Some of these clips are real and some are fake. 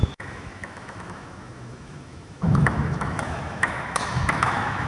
fake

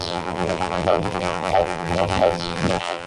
fake